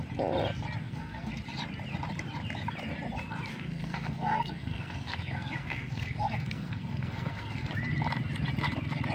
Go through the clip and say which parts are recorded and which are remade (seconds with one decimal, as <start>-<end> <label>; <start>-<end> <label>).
0.0-0.8 recorded; 0.8-1.3 remade; 1.3-3.5 recorded; 3.5-7.7 remade; 7.7-9.1 recorded